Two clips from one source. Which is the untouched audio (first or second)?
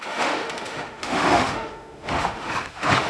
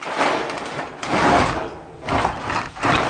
second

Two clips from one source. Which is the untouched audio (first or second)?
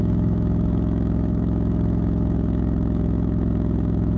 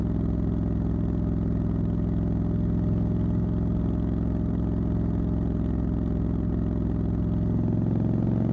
second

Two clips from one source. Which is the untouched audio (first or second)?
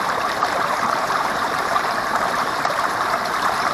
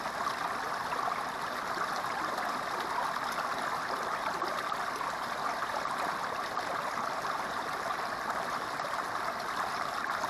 second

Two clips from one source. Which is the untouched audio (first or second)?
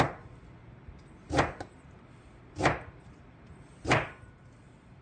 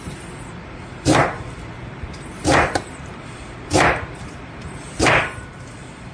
first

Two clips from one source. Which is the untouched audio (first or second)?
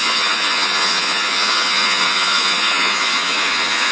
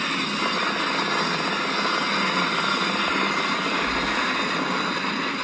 second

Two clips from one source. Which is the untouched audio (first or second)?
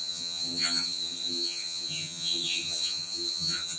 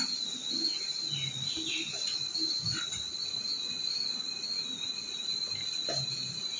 second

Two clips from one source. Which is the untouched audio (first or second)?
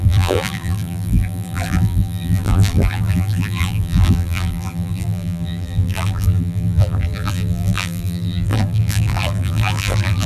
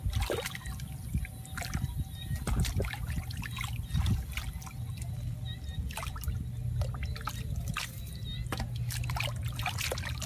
second